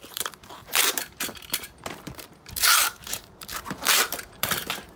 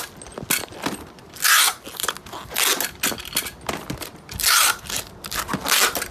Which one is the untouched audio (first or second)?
second